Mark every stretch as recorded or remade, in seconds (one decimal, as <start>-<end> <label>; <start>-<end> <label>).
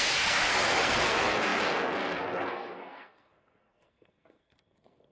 0.0-5.1 remade